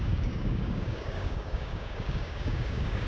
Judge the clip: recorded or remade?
remade